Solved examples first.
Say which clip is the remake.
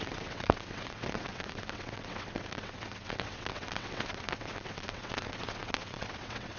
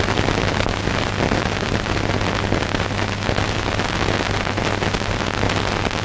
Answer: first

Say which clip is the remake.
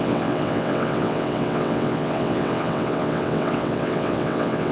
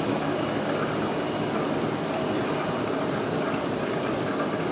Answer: first